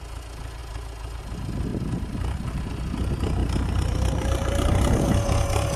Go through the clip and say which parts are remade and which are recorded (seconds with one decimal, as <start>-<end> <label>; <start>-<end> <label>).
0.0-1.7 recorded; 1.7-2.6 remade; 2.6-3.4 recorded; 3.4-5.1 remade; 5.1-5.8 recorded